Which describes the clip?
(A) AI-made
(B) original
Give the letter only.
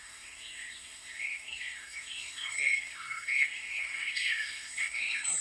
A